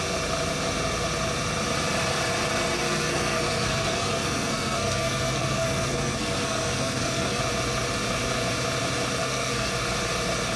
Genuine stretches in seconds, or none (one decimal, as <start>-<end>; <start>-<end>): 0.0-2.8; 7.4-9.2; 9.7-10.6